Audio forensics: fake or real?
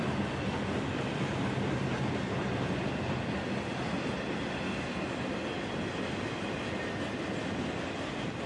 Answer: real